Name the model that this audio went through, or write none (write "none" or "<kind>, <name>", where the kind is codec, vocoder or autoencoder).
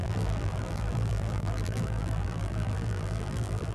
vocoder, BigVGAN v2